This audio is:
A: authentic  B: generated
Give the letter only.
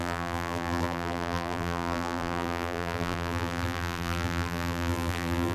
B